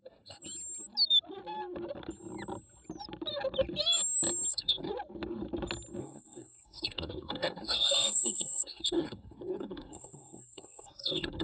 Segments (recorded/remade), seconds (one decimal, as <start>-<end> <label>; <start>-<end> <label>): 0.0-0.4 remade; 0.4-4.5 recorded; 4.5-4.9 remade; 4.9-6.0 recorded; 6.0-11.4 remade